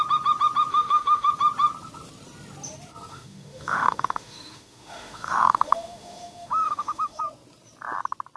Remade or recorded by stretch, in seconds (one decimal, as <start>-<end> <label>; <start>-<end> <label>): 0.0-0.7 recorded; 0.7-1.3 remade; 1.3-3.1 recorded; 3.1-7.2 remade; 7.2-8.4 recorded